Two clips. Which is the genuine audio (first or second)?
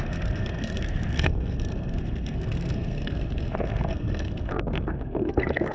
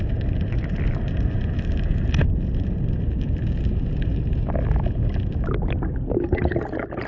second